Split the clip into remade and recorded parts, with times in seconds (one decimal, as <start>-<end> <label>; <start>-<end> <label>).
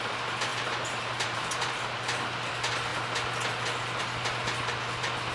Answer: 0.0-0.5 recorded; 0.5-2.5 remade; 2.5-5.3 recorded